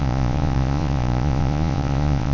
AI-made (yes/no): yes